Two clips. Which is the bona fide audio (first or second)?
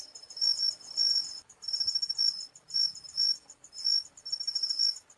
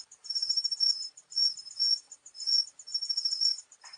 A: first